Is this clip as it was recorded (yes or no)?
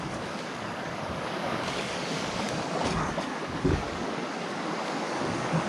no